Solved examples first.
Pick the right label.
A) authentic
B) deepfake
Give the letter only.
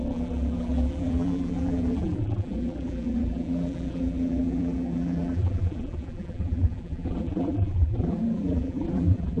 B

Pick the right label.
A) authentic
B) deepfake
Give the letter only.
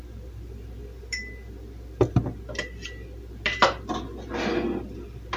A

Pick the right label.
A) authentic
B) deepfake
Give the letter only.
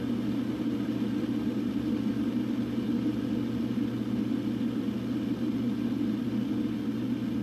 A